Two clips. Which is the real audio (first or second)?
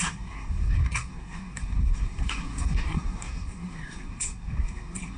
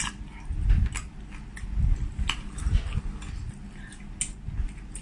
second